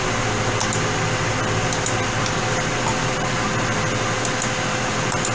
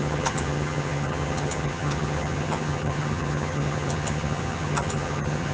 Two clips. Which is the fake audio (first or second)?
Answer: second